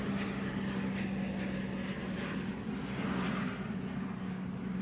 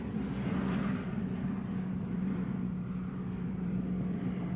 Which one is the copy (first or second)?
second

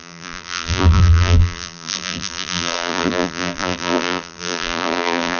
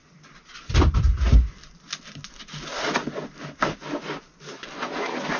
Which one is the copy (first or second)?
first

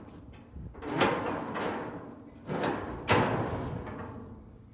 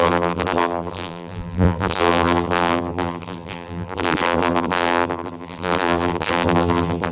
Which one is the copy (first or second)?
second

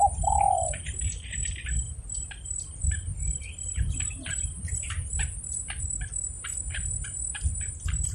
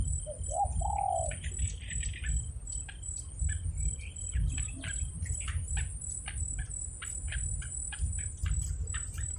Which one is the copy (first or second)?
first